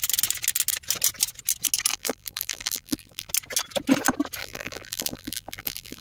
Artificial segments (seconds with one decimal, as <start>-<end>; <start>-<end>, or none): 1.9-3.3; 4.4-6.0